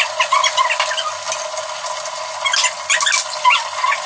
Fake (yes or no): no